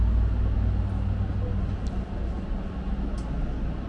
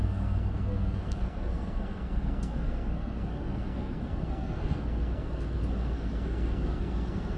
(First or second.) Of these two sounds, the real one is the first